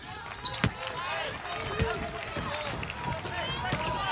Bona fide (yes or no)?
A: yes